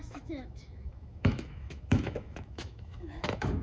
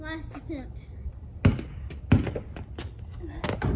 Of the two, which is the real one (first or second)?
second